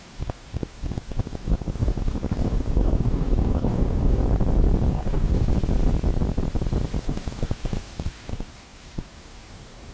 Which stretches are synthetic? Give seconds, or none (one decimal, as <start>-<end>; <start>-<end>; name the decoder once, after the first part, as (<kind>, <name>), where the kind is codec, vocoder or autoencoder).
0.0-4.2 (codec, DAC); 4.9-5.5; 7.0-9.9